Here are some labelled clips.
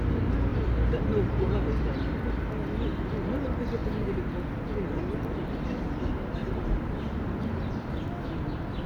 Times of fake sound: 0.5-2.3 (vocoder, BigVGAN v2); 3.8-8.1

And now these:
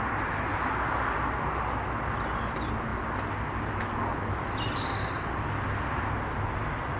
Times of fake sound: none

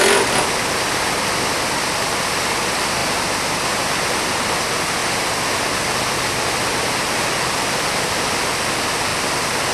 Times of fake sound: 6.7-8.5 (vocoder, BigVGAN v2)

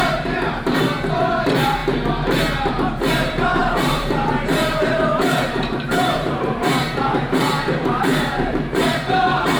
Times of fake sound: 0.0-1.8 (vocoder, BigVGAN v2); 2.7-9.6

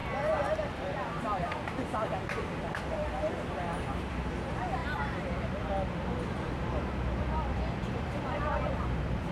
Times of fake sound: 0.0-9.3 (vocoder, BigVGAN v2)

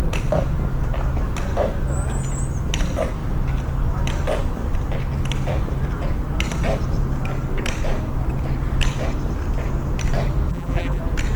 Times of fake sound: 10.5-11.0 (vocoder, BigVGAN v2)

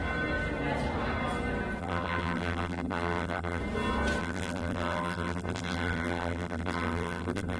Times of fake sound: 1.8-3.6 (vocoder, BigVGAN v2); 4.2-7.6

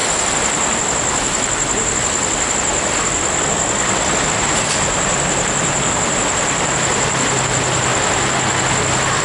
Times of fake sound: 4.3-7.9 (vocoder, BigVGAN v2)